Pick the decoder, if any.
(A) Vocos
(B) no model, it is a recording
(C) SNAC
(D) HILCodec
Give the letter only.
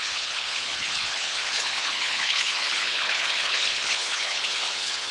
D